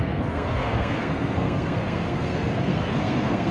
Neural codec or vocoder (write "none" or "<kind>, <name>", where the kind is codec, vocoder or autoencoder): codec, SNAC